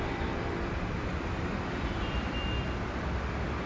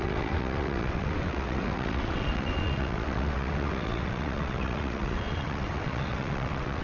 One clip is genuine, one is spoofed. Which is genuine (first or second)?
first